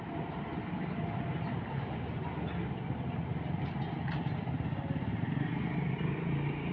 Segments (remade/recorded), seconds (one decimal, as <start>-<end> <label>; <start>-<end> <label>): 0.0-6.7 recorded